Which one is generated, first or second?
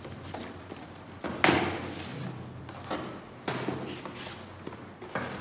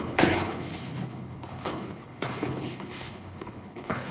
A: second